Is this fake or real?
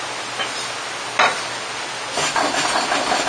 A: real